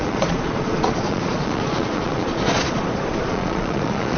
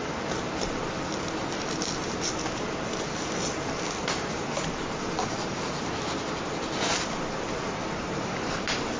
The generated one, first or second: first